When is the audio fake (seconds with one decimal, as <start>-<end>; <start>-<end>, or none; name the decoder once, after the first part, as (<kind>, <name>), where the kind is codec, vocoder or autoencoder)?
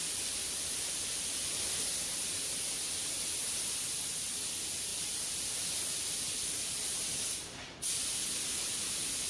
0.0-1.7 (vocoder, BigVGAN v2); 4.9-6.7